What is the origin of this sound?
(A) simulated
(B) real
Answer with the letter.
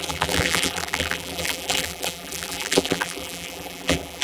A